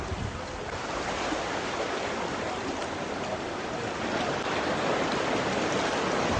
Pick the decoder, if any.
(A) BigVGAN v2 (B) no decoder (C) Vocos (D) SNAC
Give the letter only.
B